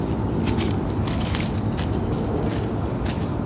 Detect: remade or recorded recorded